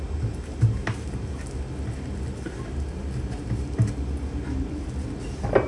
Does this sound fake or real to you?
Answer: real